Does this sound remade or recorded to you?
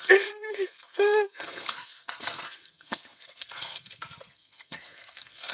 remade